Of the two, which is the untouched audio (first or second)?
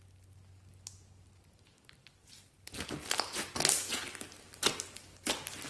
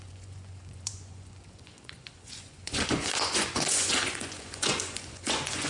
first